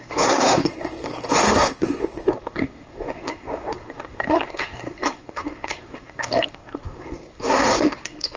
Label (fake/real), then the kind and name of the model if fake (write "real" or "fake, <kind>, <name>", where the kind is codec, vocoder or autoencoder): fake, codec, SNAC